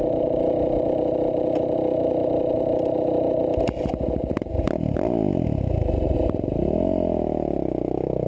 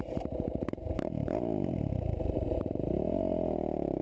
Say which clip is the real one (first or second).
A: first